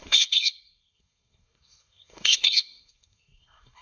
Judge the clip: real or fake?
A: fake